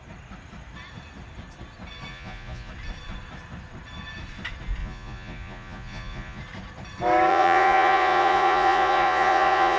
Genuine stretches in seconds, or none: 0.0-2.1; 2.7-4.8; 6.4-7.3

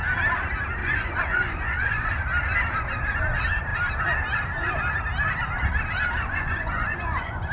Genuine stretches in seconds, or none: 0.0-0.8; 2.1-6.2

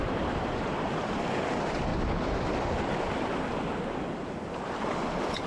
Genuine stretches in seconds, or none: 0.0-5.5

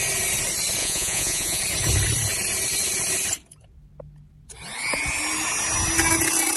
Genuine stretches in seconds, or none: 0.0-0.8; 1.6-6.6

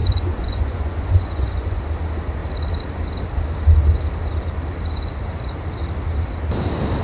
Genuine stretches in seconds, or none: 1.8-7.0

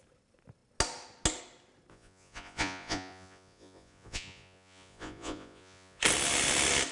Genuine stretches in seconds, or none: 0.0-1.9; 6.0-6.9

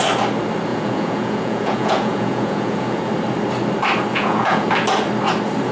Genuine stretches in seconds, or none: 0.0-0.7; 3.1-4.1; 4.7-5.7

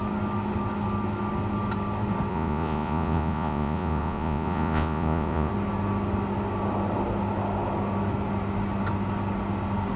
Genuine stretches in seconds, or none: 0.0-2.3; 5.5-10.0